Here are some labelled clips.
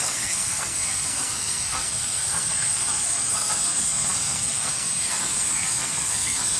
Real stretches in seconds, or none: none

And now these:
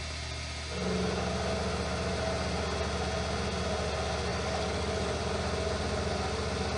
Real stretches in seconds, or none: 0.0-4.3; 5.2-6.8

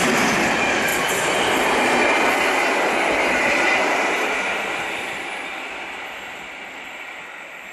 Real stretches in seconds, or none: 0.0-7.7

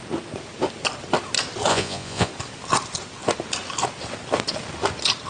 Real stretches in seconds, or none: 0.0-1.7; 2.3-5.3